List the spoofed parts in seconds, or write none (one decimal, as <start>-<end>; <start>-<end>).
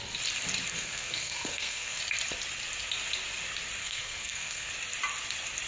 0.7-2.0; 3.8-4.7